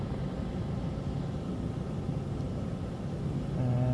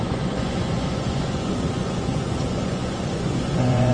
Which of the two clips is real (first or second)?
first